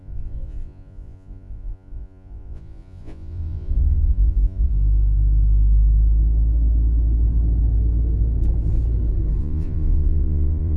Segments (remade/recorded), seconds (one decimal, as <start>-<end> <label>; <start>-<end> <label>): 0.0-4.7 remade; 4.7-9.4 recorded; 9.4-10.8 remade